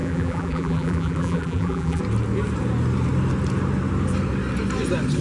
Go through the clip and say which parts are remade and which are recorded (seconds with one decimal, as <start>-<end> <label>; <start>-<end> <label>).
0.0-2.0 remade; 2.0-5.2 recorded